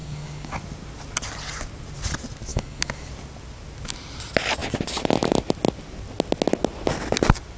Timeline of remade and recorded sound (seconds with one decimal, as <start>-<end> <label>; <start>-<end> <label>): 0.0-0.6 remade; 0.6-2.5 recorded; 2.5-3.1 remade; 3.1-7.6 recorded